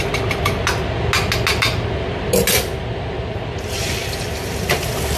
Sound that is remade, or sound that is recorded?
recorded